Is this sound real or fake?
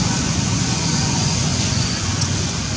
fake